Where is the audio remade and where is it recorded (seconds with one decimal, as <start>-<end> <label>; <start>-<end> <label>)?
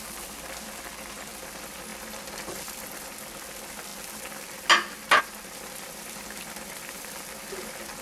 0.0-8.0 recorded